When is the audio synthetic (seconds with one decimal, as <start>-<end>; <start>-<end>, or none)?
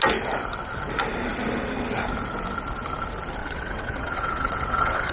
3.4-5.1